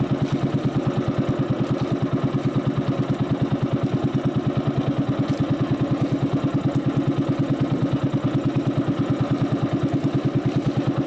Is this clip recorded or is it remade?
recorded